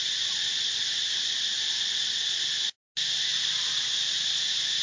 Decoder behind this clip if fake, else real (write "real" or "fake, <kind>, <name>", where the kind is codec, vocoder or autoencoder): real